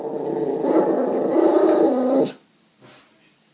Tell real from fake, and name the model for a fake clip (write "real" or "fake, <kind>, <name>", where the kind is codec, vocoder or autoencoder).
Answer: real